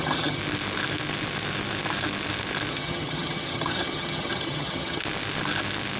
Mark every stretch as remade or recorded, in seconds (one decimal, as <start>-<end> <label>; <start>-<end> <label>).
0.0-0.4 remade; 0.4-2.7 recorded; 2.7-5.0 remade; 5.0-6.0 recorded